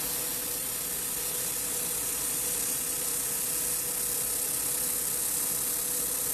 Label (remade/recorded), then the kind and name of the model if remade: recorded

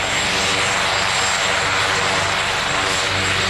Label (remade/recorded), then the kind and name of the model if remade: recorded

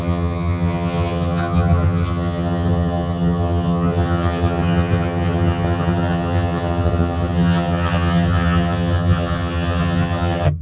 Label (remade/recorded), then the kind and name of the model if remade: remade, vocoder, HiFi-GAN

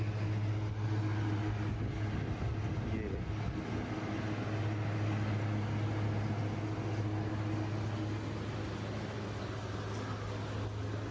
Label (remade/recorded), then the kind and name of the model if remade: recorded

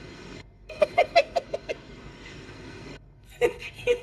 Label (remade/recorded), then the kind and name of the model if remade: remade, codec, SNAC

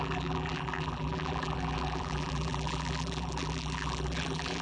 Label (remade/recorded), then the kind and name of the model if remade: remade, vocoder, BigVGAN v2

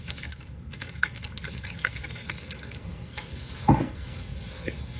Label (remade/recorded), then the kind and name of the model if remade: remade, codec, SNAC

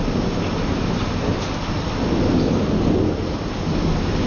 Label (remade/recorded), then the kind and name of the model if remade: recorded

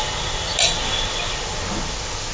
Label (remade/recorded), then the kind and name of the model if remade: recorded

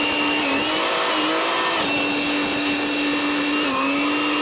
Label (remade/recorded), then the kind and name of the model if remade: recorded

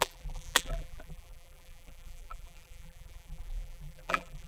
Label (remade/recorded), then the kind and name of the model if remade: remade, vocoder, BigVGAN v2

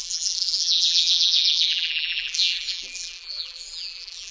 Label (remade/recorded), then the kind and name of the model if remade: remade, vocoder, BigVGAN v2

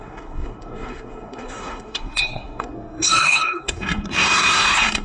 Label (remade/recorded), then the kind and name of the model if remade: remade, codec, SNAC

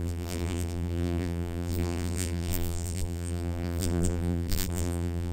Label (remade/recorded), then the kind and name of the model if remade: remade, vocoder, BigVGAN v2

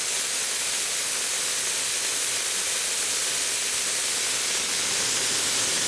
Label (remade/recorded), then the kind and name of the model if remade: recorded